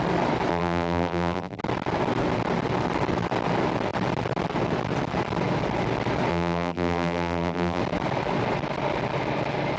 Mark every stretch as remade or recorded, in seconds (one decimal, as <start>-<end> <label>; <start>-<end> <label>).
0.0-0.5 recorded; 0.5-1.6 remade; 1.6-6.3 recorded; 6.3-7.8 remade; 7.8-9.8 recorded